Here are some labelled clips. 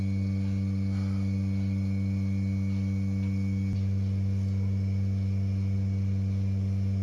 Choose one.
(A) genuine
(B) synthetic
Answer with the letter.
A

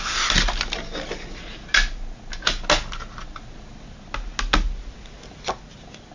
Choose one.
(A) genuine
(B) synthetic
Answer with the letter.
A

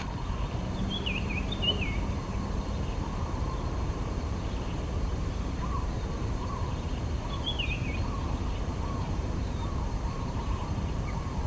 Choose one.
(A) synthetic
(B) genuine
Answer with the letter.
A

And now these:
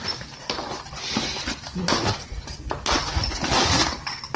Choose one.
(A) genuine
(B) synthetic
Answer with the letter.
A